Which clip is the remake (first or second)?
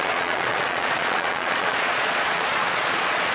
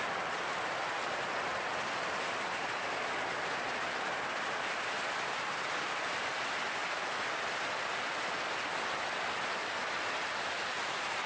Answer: first